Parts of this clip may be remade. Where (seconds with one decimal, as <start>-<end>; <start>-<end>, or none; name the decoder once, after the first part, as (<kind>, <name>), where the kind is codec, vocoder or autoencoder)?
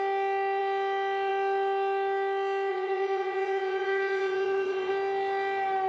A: 2.7-4.9 (vocoder, Vocos)